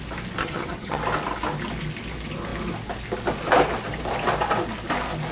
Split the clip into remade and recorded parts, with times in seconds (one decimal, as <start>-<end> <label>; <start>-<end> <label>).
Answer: 0.0-0.4 recorded; 0.4-1.0 remade; 1.0-5.3 recorded